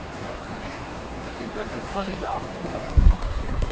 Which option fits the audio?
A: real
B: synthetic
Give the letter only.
B